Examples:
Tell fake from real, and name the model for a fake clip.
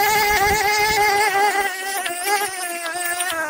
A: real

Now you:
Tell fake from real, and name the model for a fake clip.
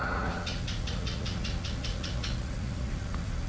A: fake, vocoder, Vocos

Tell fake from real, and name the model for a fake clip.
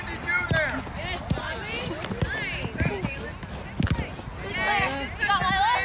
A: real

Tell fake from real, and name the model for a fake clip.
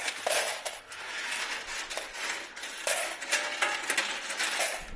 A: real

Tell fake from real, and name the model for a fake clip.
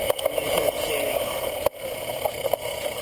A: fake, vocoder, Vocos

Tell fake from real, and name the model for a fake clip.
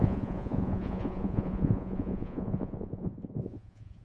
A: fake, vocoder, Vocos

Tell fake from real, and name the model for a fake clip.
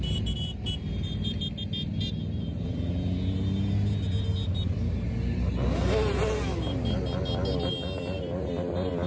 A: real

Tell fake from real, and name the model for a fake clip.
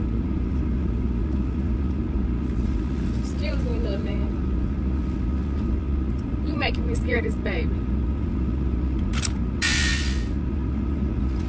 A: fake, vocoder, Vocos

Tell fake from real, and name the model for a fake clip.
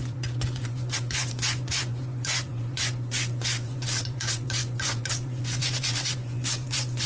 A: fake, vocoder, Vocos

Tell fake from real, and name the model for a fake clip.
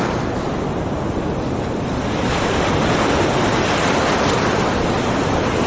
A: real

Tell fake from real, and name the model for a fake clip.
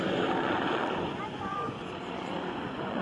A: fake, vocoder, Vocos